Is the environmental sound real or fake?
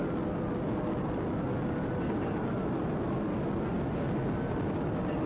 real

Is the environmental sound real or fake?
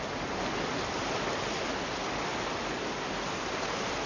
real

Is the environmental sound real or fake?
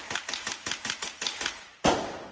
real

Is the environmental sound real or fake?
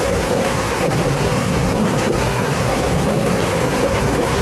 fake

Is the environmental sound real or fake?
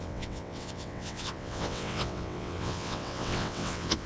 fake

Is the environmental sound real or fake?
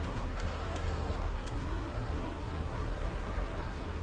fake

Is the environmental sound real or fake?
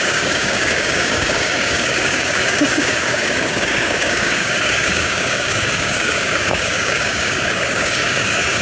fake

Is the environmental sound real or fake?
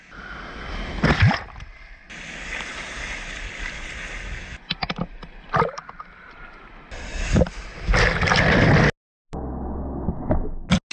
real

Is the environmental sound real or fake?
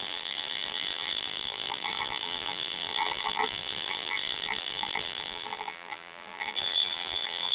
fake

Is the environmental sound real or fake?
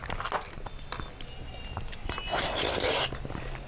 real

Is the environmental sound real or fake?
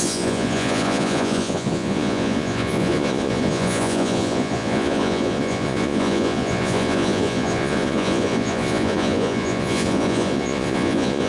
fake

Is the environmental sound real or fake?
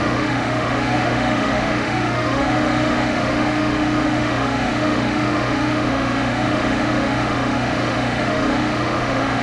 fake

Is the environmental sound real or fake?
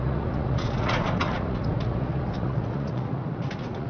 fake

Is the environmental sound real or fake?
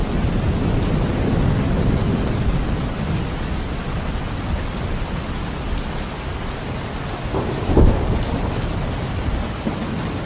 real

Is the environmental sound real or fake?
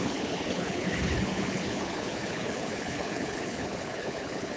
fake